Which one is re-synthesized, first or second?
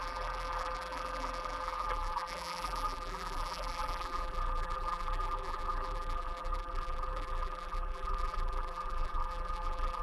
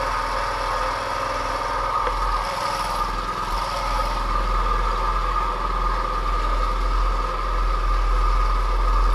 first